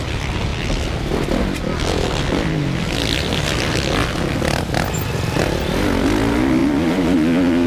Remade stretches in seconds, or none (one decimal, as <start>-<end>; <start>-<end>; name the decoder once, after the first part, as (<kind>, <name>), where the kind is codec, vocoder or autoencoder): none